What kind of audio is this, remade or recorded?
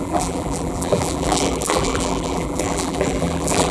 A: remade